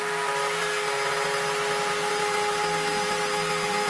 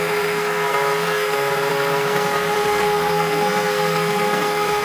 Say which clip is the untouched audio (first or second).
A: first